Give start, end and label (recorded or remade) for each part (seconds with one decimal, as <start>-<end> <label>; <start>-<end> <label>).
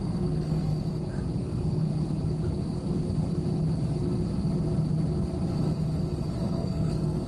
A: 0.0-0.7 remade; 0.7-1.4 recorded; 1.4-1.9 remade; 1.9-6.3 recorded; 6.3-7.3 remade